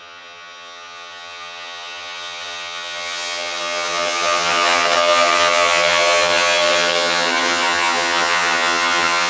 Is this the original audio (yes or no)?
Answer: no